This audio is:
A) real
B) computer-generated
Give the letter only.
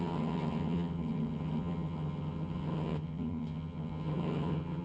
B